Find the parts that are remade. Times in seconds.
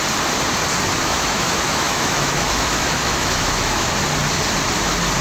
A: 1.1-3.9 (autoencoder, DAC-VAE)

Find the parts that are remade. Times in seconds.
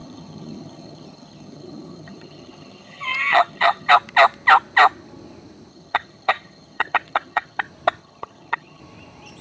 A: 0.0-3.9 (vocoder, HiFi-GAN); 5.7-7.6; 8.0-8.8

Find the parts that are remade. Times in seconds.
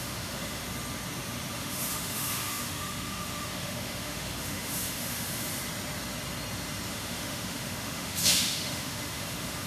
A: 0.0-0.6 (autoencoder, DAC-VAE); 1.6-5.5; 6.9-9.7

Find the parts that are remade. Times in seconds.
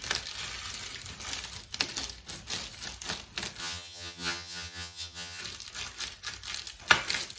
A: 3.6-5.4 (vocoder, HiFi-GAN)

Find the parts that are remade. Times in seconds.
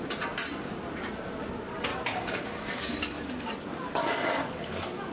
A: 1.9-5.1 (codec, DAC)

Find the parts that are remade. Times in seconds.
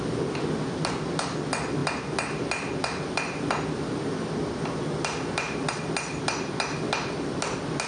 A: none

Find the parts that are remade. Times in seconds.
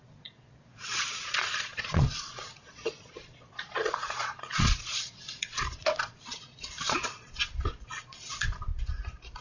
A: 0.0-8.7 (vocoder, Vocos)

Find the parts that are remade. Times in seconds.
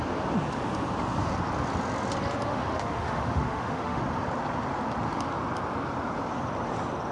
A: 2.5-4.0 (autoencoder, DAC-VAE)